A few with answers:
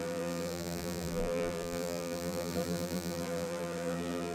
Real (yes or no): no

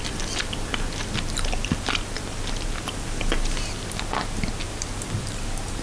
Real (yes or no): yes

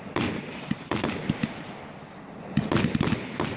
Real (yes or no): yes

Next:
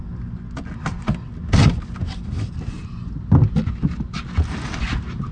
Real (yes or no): yes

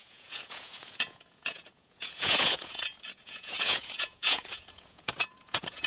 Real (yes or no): no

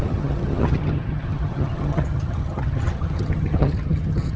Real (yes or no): no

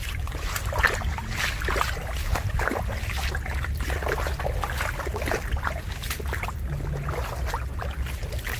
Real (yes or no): yes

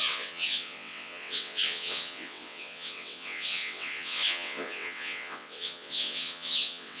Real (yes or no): no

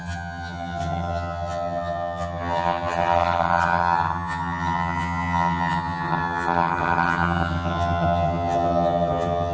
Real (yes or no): no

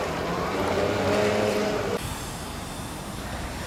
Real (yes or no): no